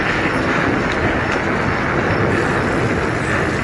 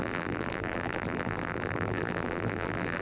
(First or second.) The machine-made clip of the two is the second